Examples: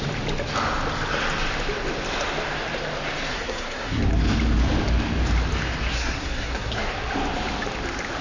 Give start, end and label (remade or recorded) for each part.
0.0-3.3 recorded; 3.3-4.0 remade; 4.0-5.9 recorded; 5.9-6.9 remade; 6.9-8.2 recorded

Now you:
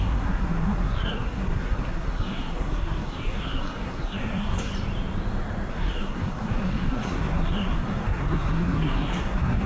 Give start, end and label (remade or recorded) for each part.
0.0-4.7 remade; 4.7-5.7 recorded; 5.7-9.7 remade

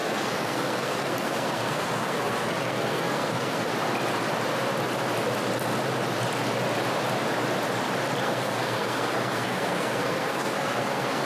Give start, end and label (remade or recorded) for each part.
0.0-3.7 remade; 3.7-8.2 recorded; 8.2-11.3 remade

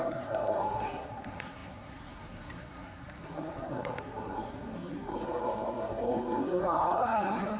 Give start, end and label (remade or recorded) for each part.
0.0-7.6 remade